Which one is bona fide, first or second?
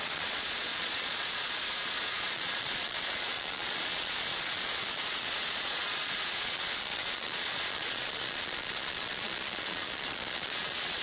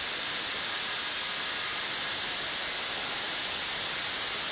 second